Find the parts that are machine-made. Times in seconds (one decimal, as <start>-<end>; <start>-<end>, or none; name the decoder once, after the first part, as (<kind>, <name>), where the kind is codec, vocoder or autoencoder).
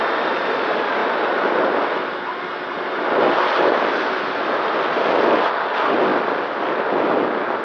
none